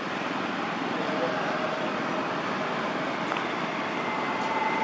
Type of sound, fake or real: real